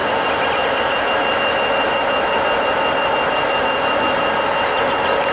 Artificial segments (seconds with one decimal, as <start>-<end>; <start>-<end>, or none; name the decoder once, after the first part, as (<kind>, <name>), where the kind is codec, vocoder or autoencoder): none